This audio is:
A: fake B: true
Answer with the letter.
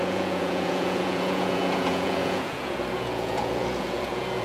A